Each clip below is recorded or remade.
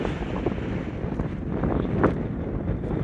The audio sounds recorded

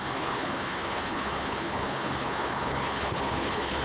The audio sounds remade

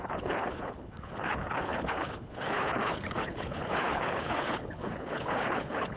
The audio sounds remade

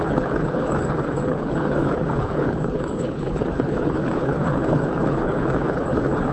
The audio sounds remade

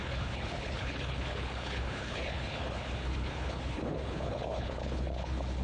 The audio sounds remade